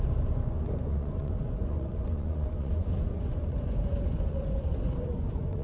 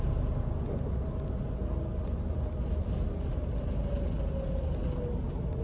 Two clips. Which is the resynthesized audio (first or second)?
first